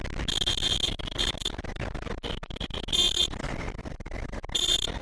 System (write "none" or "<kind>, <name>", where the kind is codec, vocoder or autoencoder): none